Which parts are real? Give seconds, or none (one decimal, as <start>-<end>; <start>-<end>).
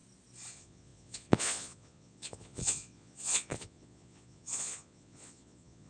0.0-0.5